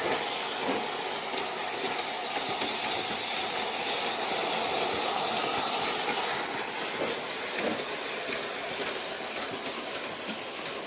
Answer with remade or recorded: recorded